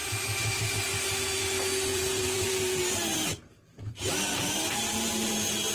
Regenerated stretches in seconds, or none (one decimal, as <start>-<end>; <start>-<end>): 0.0-0.7; 1.9-5.3